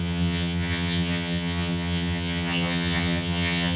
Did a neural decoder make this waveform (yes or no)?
yes